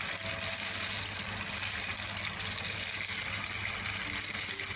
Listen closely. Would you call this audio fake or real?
real